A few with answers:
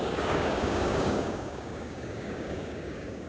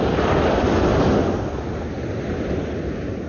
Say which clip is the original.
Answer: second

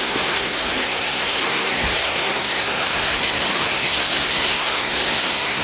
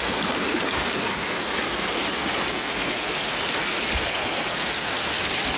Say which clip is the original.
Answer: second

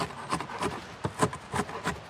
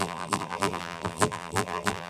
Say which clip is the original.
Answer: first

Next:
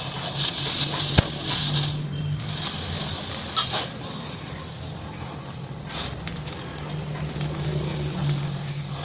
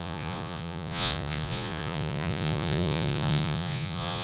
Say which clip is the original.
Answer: first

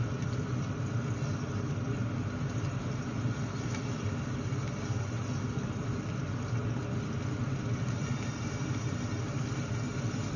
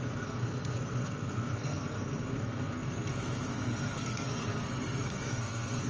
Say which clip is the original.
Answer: first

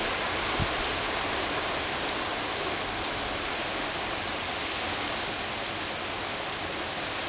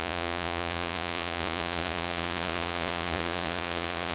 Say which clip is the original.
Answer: first